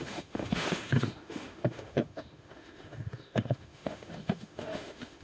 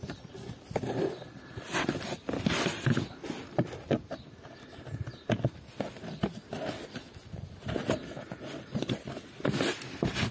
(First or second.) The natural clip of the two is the second